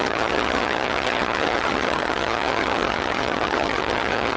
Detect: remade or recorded remade